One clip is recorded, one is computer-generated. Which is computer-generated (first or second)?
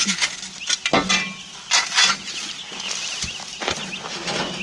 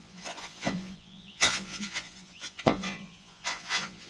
second